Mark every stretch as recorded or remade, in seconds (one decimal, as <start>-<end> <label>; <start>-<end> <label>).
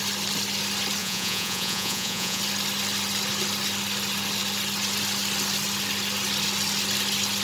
0.0-1.0 recorded; 1.0-2.4 remade; 2.4-7.4 recorded